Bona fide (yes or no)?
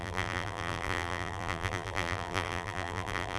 no